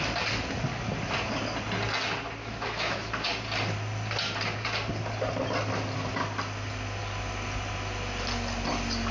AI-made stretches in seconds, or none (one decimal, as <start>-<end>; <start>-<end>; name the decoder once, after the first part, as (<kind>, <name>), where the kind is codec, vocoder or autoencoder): 2.4-3.1 (autoencoder, DAC-VAE)